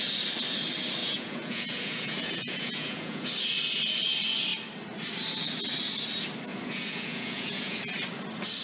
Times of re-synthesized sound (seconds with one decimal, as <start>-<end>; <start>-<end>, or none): 1.0-3.3; 6.5-7.8